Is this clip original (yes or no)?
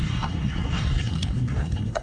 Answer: no